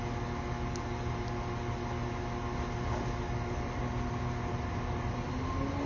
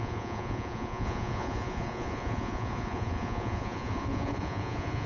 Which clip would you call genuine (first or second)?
first